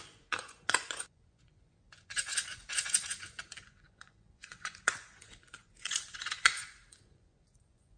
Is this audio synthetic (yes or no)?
yes